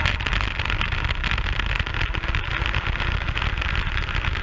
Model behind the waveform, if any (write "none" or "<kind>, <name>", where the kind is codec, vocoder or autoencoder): none